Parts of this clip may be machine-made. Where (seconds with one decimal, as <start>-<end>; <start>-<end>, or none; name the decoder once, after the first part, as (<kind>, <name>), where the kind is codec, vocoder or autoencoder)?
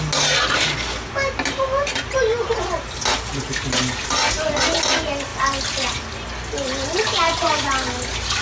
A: none